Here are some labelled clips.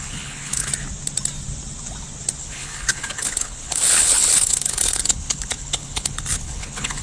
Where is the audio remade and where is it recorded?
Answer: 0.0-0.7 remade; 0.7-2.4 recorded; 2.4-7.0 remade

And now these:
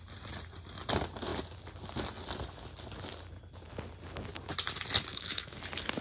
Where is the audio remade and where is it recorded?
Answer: 0.0-5.1 recorded; 5.1-5.6 remade; 5.6-6.0 recorded

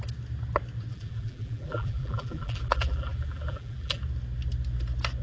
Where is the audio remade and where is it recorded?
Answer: 0.0-0.9 recorded; 0.9-4.0 remade; 4.0-5.2 recorded

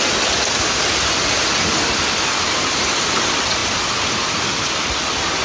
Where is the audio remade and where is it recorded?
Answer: 0.0-5.4 recorded

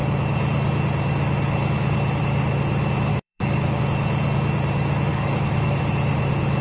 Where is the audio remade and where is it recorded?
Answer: 0.0-3.1 recorded; 3.1-3.8 remade; 3.8-5.1 recorded; 5.1-5.8 remade; 5.8-6.6 recorded

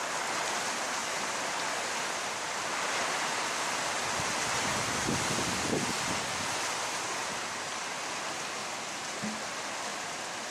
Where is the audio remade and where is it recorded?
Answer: 0.0-1.0 recorded; 1.0-3.7 remade; 3.7-7.2 recorded; 7.2-7.8 remade; 7.8-8.6 recorded; 8.6-9.2 remade; 9.2-9.9 recorded; 9.9-10.5 remade

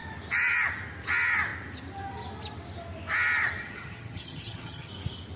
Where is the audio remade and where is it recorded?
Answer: 0.0-3.6 recorded; 3.6-4.9 remade; 4.9-5.4 recorded